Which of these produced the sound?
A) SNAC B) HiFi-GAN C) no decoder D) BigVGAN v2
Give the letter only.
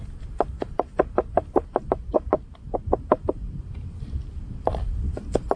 C